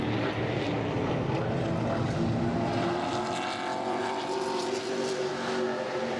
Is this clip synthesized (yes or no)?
no